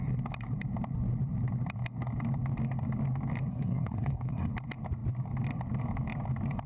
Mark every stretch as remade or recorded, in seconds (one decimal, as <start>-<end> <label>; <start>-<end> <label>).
0.0-3.5 recorded; 3.5-4.5 remade; 4.5-6.7 recorded